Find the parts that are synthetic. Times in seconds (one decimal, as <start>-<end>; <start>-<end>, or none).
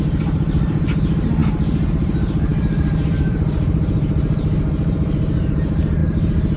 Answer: 0.0-1.4; 1.9-6.6